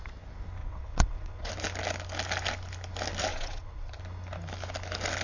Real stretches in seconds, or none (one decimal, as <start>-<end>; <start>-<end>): 0.0-0.6; 1.5-3.3; 4.0-5.2